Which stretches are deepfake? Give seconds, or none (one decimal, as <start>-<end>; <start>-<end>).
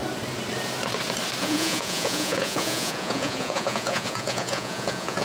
1.4-5.2